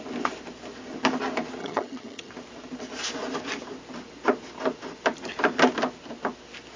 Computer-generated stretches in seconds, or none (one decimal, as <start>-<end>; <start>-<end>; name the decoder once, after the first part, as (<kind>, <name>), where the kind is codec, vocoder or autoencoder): 1.6-2.3 (vocoder, HiFi-GAN)